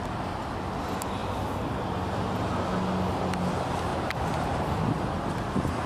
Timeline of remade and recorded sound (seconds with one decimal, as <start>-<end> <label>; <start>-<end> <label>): 0.0-3.9 recorded; 3.9-4.6 remade; 4.6-5.9 recorded